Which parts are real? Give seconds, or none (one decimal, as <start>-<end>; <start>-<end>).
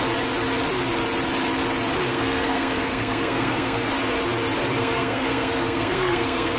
0.0-2.1; 3.9-4.8